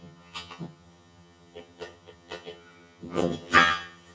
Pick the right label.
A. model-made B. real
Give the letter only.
A